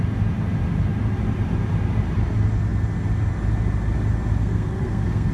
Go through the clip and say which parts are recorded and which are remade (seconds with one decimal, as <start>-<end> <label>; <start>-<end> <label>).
0.0-4.4 recorded; 4.4-5.3 remade